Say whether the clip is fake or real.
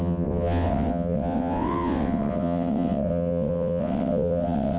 fake